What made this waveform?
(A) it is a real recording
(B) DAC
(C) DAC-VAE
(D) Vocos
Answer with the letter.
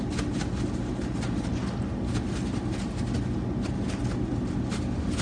A